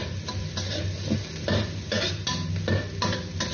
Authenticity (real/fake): real